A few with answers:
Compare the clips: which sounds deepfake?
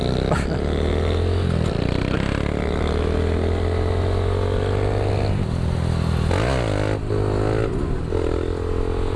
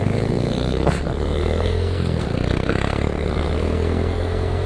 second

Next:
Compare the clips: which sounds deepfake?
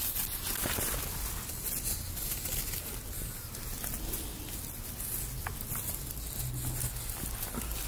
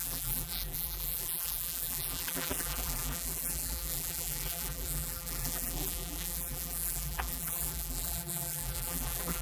second